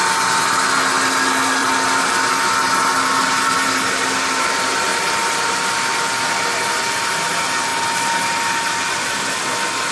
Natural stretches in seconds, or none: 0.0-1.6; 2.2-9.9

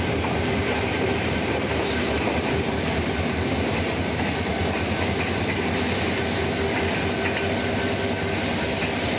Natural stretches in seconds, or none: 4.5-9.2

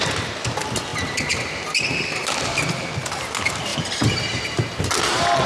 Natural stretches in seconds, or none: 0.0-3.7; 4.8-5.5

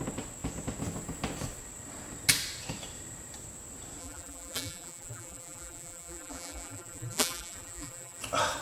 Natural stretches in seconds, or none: 0.0-4.0; 8.2-8.6

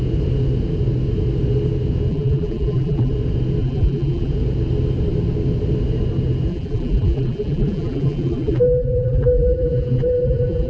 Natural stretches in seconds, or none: 0.0-2.1; 3.1-3.6; 4.3-6.5

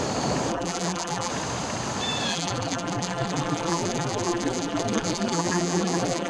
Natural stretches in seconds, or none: 0.0-0.5; 1.3-2.3

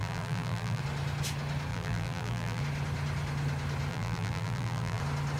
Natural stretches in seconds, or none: 0.8-1.7; 2.6-3.9; 5.0-5.4